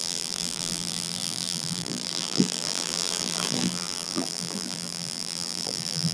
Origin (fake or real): fake